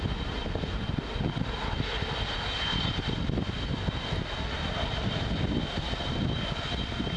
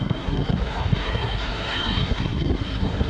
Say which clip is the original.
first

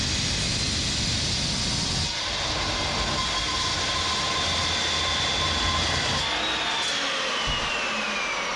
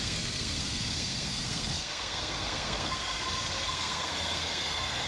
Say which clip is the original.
first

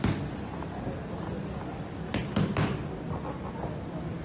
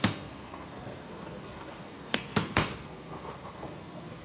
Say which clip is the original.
first